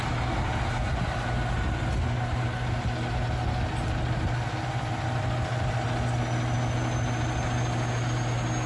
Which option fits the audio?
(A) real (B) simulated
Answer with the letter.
A